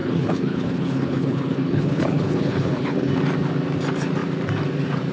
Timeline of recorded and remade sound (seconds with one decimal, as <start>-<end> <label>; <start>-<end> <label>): 0.0-3.1 remade; 3.1-5.1 recorded